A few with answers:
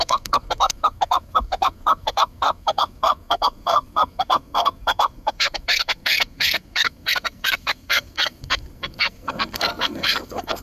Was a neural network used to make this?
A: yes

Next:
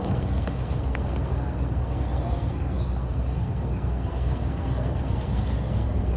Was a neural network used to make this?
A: yes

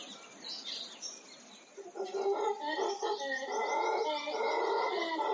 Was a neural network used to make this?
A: no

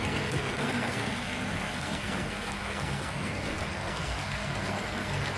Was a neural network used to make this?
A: yes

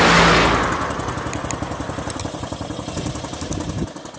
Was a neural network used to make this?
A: no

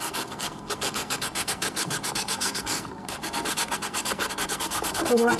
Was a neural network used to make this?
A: yes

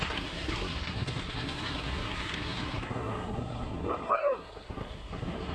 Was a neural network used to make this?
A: yes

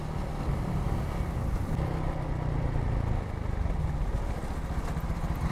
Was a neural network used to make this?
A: no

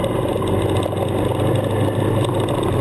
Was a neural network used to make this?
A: no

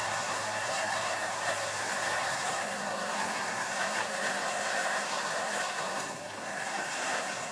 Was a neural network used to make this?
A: yes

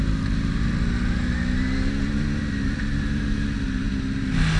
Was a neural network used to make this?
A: no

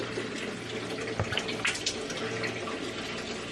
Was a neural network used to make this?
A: no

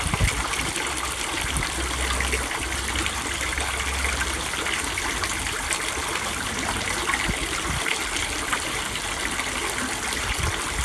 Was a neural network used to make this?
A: no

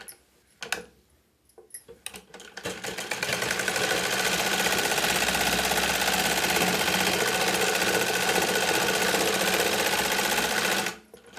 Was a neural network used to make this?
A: no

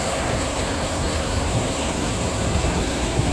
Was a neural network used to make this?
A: yes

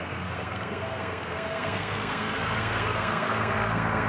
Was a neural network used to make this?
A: yes